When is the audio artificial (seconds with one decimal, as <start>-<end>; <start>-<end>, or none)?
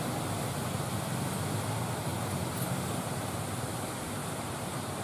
4.2-5.0